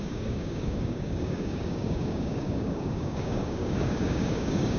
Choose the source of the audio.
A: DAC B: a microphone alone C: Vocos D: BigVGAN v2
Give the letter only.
A